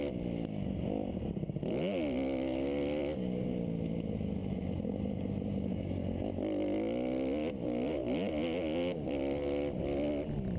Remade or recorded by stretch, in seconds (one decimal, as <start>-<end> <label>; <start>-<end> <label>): 0.0-4.4 recorded; 4.4-5.8 remade; 5.8-10.6 recorded